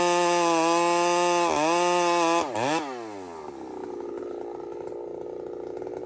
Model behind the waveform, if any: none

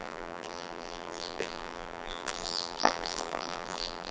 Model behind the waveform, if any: vocoder, BigVGAN v2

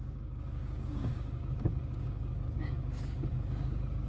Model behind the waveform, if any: codec, DAC